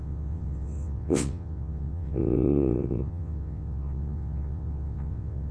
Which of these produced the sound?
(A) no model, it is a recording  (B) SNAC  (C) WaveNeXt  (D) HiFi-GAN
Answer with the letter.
C